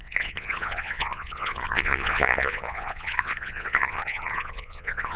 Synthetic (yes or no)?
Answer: yes